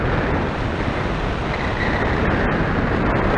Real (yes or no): yes